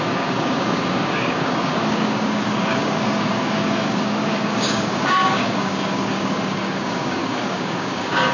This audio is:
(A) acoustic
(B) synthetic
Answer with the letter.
B